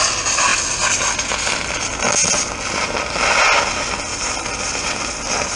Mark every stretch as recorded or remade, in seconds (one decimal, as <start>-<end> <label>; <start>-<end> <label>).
0.0-5.6 recorded

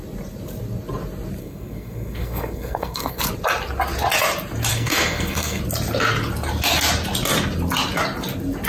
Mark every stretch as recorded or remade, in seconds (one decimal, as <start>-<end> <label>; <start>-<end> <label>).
0.0-1.4 recorded; 1.4-3.2 remade; 3.2-4.7 recorded; 4.7-5.6 remade; 5.6-8.7 recorded

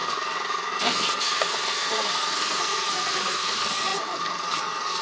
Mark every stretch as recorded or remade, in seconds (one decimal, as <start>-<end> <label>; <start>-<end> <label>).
0.0-5.0 remade

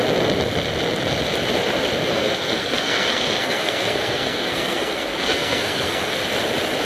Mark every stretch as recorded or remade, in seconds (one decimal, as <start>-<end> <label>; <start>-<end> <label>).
0.0-2.1 recorded; 2.1-6.2 remade; 6.2-6.8 recorded

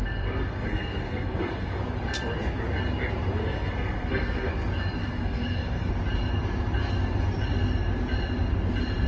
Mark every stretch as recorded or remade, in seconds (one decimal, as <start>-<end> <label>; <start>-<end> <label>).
0.0-0.4 recorded; 0.4-1.8 remade; 1.8-3.4 recorded; 3.4-4.5 remade; 4.5-5.0 recorded; 5.0-5.9 remade; 5.9-9.1 recorded